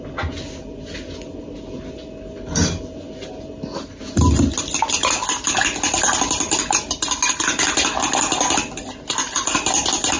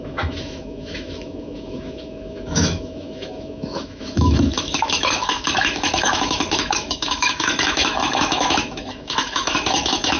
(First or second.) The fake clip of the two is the second